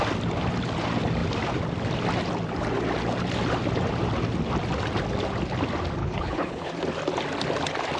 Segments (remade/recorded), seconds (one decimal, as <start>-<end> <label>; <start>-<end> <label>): 0.0-6.0 recorded; 6.0-6.7 remade; 6.7-8.0 recorded